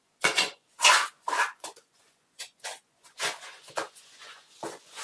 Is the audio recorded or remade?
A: remade